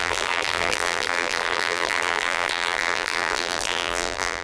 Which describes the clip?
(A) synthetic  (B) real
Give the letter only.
A